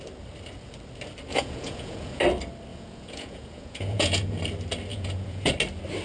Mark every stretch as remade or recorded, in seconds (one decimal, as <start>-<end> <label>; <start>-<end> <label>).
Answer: 0.0-1.3 recorded; 1.3-2.2 remade; 2.2-2.7 recorded; 2.7-4.4 remade; 4.4-4.9 recorded; 4.9-5.5 remade; 5.5-6.0 recorded

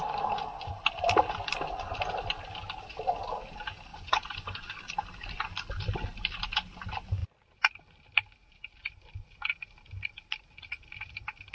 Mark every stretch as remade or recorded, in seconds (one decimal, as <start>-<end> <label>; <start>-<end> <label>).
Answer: 0.0-3.9 recorded; 3.9-4.7 remade; 4.7-11.5 recorded

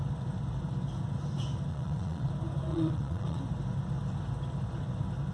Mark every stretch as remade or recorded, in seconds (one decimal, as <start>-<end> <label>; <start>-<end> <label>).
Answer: 0.0-1.7 recorded; 1.7-2.3 remade; 2.3-2.7 recorded; 2.7-3.4 remade; 3.4-5.3 recorded

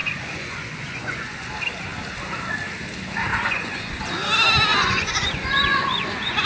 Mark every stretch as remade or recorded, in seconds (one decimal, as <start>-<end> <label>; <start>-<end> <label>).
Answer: 0.0-1.5 remade; 1.5-3.3 recorded; 3.3-4.0 remade; 4.0-4.7 recorded; 4.7-6.5 remade

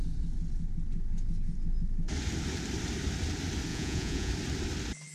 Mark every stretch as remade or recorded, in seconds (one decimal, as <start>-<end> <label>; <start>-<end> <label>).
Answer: 0.0-3.7 recorded; 3.7-4.3 remade; 4.3-5.1 recorded

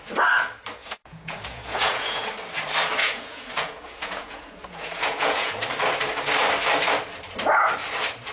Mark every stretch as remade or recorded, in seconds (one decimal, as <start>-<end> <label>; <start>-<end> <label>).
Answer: 0.0-0.8 recorded; 0.8-2.3 remade; 2.3-3.0 recorded; 3.0-5.5 remade; 5.5-8.3 recorded